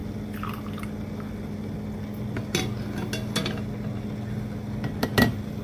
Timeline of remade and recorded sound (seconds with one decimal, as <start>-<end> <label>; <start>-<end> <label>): 0.0-5.6 recorded